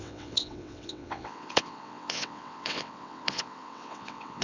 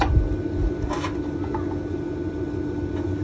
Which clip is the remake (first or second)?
first